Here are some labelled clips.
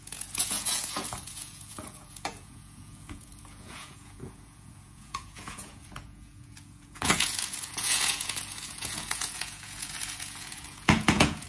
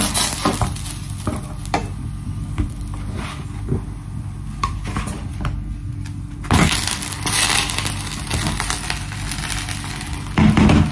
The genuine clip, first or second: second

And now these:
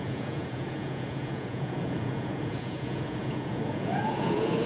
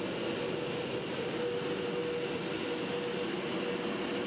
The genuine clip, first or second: second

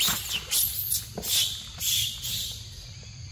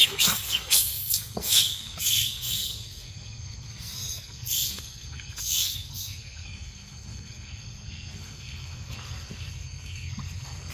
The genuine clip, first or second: first